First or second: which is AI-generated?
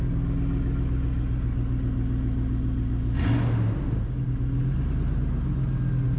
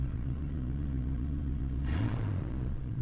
second